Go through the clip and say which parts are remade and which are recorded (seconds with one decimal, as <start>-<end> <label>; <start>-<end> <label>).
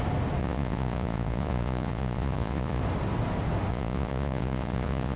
0.0-0.4 recorded; 0.4-2.8 remade; 2.8-3.7 recorded; 3.7-5.2 remade